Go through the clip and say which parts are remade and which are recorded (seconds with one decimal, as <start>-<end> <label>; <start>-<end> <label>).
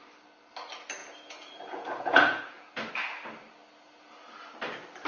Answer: 0.0-1.0 recorded; 1.0-2.6 remade; 2.6-5.1 recorded